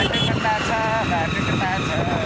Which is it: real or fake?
real